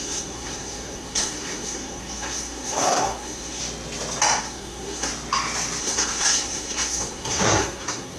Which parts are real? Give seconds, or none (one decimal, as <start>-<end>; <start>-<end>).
3.6-4.4; 5.1-5.8